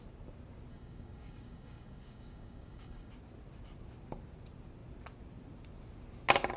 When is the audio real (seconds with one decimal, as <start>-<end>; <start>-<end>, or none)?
0.0-0.7; 3.1-6.6